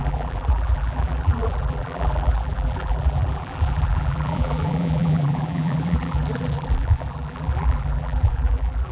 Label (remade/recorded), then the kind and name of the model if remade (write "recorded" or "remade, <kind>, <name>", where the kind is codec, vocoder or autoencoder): remade, vocoder, BigVGAN v2